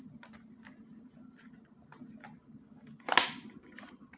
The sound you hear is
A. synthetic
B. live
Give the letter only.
B